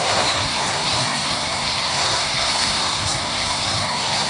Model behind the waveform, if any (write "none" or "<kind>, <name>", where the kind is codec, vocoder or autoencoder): codec, SNAC